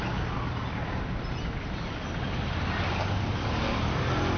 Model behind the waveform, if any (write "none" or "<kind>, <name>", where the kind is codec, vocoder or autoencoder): none